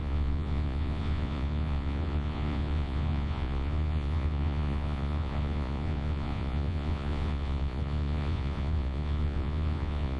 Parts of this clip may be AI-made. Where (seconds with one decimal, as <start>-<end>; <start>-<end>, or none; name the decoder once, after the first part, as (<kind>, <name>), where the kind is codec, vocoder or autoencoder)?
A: 0.0-10.2 (vocoder, Vocos)